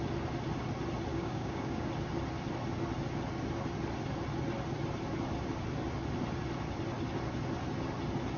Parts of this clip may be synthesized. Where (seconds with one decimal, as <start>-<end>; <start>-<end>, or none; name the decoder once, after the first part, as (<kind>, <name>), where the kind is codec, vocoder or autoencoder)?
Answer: 1.1-1.9 (codec, DAC)